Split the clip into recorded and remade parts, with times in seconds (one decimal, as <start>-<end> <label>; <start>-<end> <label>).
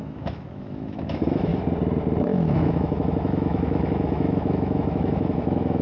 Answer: 0.0-1.5 remade; 1.5-2.2 recorded; 2.2-5.8 remade